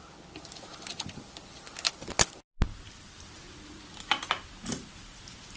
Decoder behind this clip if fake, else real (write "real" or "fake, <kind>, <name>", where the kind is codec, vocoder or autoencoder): real